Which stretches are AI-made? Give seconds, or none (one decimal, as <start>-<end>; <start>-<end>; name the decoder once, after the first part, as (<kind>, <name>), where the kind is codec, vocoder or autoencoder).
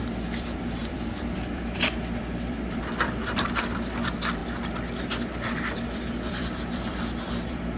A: 0.0-4.4 (vocoder, BigVGAN v2); 5.0-7.8